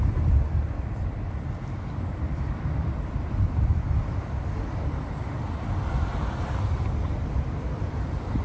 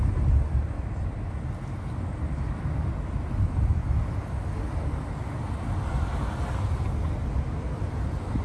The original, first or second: second